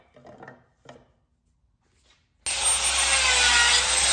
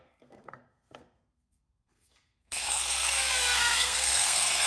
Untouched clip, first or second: first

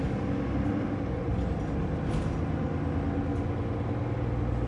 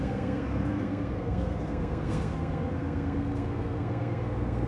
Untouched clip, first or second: first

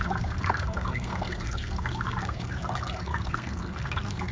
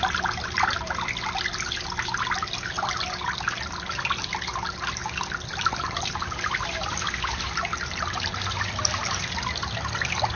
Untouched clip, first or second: second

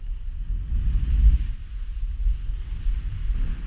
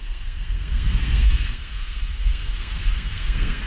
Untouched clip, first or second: first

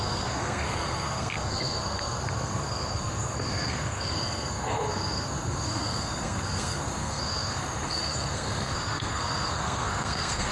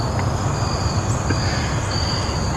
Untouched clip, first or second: second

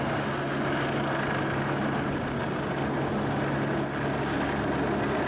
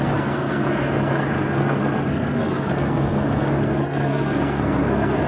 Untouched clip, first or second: first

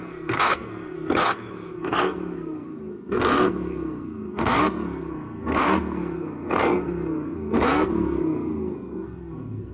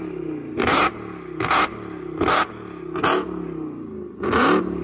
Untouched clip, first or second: second